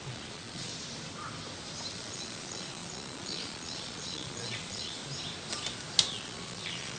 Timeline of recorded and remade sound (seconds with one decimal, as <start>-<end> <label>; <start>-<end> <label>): 0.0-0.7 remade; 0.7-1.9 recorded; 1.9-5.0 remade; 5.0-6.1 recorded; 6.1-7.0 remade